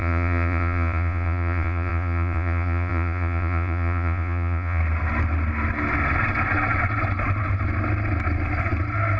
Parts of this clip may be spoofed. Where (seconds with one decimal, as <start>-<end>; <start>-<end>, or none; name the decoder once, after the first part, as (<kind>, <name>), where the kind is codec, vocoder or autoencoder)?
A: 0.0-4.8 (vocoder, Vocos)

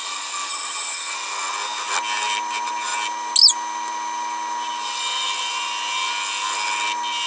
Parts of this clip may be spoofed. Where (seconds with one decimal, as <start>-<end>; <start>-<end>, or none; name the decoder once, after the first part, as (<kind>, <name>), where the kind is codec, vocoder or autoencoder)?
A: 0.5-1.1 (vocoder, HiFi-GAN)

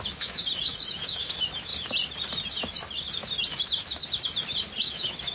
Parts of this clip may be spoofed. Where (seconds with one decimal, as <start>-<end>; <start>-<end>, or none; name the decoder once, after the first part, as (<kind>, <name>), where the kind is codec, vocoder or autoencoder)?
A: 0.0-1.7 (autoencoder, DAC-VAE); 3.6-4.0; 4.8-5.3

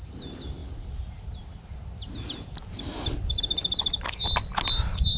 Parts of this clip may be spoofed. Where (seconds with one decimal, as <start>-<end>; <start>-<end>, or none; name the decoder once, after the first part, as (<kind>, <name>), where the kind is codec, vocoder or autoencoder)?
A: none